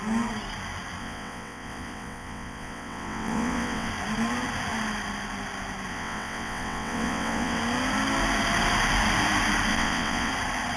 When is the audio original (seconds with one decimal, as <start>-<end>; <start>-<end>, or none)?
0.0-1.0; 3.9-5.9; 7.6-9.7; 10.3-10.8